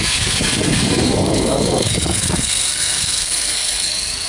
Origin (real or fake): fake